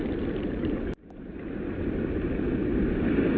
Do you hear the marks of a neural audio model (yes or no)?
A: no